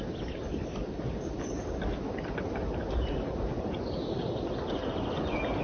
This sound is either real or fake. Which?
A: real